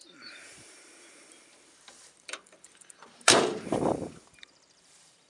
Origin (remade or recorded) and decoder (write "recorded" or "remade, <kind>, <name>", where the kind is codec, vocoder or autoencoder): remade, vocoder, BigVGAN v2